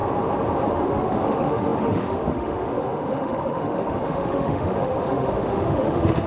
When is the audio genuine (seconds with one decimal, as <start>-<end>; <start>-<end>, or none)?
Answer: 0.0-0.7